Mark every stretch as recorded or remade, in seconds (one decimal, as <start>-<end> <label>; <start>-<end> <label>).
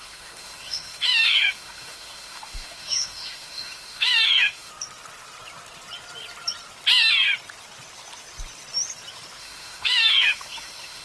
0.0-4.7 remade; 4.7-9.4 recorded; 9.4-11.0 remade